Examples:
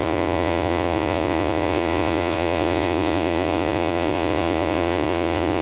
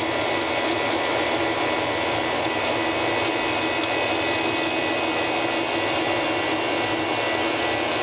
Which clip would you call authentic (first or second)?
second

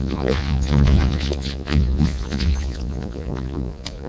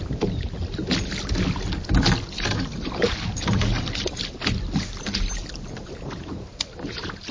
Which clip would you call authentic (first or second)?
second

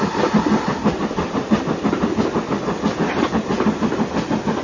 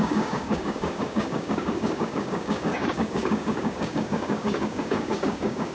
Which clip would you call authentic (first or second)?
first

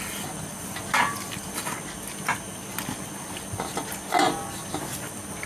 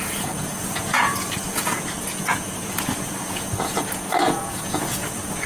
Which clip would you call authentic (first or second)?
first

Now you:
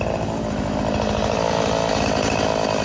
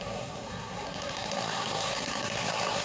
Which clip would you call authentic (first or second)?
first